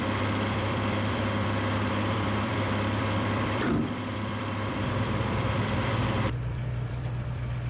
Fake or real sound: fake